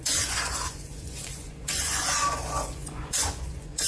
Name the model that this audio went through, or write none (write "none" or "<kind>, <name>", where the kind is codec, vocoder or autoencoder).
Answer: vocoder, Vocos